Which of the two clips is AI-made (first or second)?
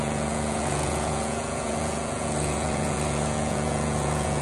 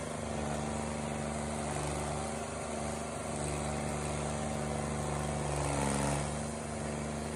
first